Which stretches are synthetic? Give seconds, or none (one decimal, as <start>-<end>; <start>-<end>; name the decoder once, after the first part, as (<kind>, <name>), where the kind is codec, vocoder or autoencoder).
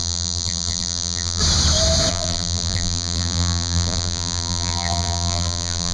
0.0-1.4 (vocoder, BigVGAN v2); 2.1-5.9